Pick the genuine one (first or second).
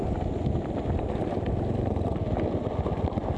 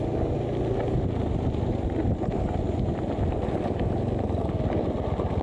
second